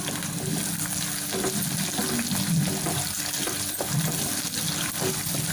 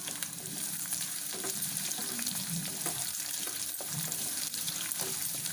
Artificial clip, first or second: second